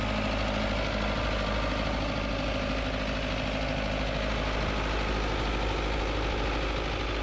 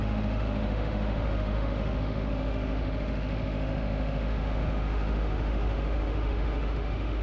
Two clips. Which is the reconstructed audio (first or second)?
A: second